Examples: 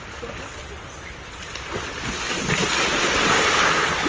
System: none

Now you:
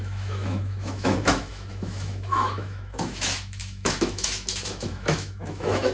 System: autoencoder, DAC-VAE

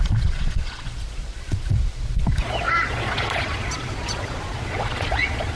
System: vocoder, Vocos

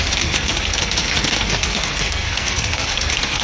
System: codec, SNAC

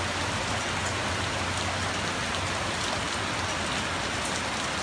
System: none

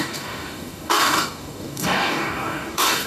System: codec, DAC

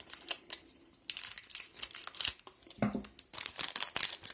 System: none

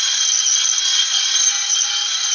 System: none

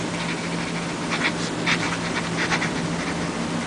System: none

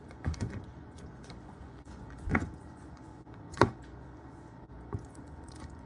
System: vocoder, Vocos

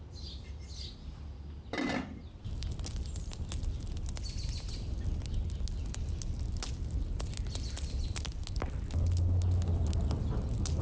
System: none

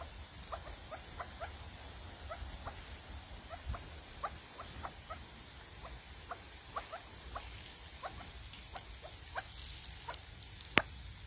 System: none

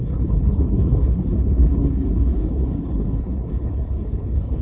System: codec, HILCodec